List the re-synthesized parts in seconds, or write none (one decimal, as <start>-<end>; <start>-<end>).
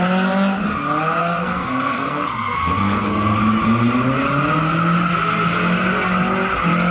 1.2-3.4